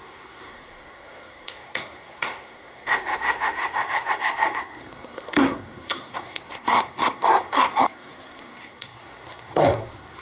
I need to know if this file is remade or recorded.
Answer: remade